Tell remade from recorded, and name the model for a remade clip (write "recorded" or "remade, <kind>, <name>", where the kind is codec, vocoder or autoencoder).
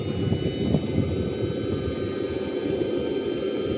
recorded